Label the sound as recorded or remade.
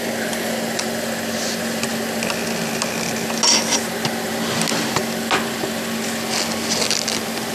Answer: recorded